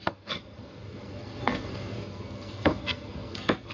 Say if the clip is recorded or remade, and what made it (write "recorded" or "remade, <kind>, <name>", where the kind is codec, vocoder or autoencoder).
remade, codec, SNAC